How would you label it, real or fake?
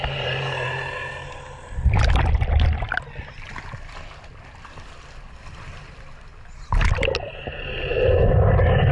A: real